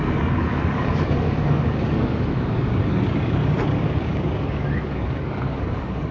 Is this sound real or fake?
fake